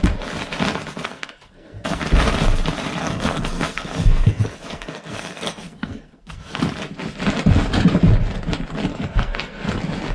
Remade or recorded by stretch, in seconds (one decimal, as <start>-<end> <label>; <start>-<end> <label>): 0.0-1.0 recorded; 1.0-2.0 remade; 2.0-3.0 recorded; 3.0-6.6 remade; 6.6-8.9 recorded; 8.9-9.7 remade; 9.7-10.1 recorded